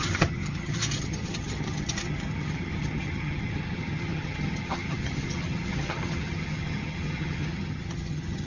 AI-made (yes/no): yes